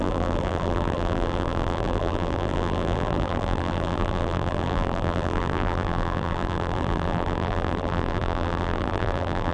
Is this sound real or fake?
fake